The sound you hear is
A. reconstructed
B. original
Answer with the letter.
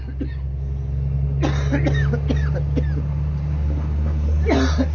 B